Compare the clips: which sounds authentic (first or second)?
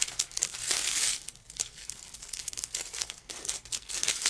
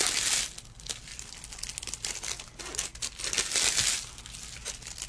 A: second